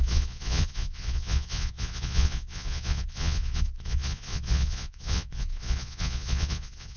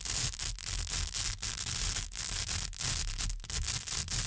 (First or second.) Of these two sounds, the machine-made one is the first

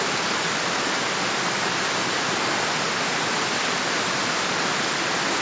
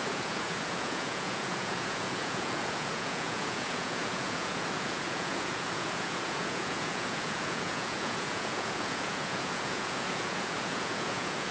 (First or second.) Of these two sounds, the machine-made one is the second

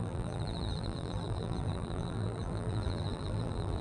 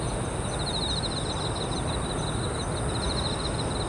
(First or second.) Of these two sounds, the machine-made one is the first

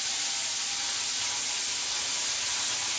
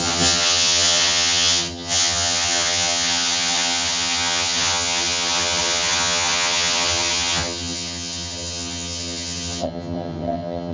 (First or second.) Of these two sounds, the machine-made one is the second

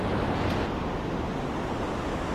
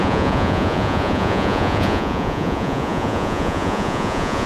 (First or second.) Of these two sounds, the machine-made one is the second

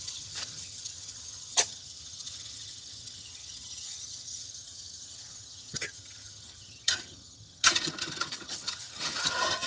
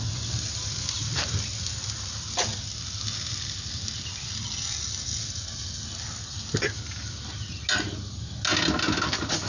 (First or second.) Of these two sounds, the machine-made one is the first